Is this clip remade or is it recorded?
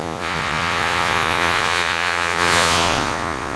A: remade